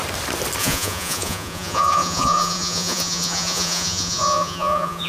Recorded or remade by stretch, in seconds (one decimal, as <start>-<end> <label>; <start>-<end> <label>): 0.0-0.6 recorded; 0.6-5.1 remade